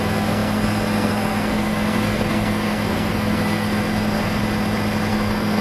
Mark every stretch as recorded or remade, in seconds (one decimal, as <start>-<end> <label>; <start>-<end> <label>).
0.0-4.4 remade; 4.4-5.1 recorded; 5.1-5.6 remade